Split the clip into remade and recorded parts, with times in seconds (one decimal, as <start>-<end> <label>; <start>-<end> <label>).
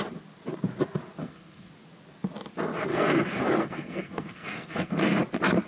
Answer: 0.0-1.2 recorded; 1.2-1.7 remade; 1.7-2.9 recorded; 2.9-5.0 remade; 5.0-5.7 recorded